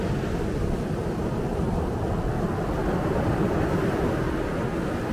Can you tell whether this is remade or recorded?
recorded